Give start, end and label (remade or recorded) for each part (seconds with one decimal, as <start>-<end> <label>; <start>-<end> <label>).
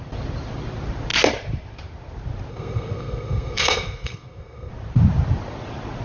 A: 0.0-2.5 recorded; 2.5-4.7 remade; 4.7-6.0 recorded